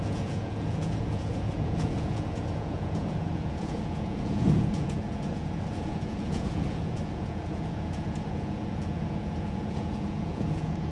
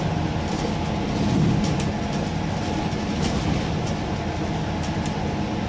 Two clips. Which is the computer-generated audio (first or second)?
first